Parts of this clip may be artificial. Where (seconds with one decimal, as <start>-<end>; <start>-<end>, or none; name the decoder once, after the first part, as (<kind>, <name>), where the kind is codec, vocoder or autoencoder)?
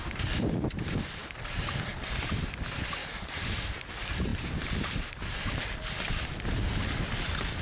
none